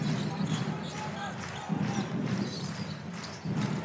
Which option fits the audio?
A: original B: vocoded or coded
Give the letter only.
A